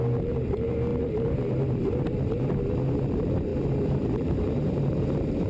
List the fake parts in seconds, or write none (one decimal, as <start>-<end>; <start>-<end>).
0.0-5.5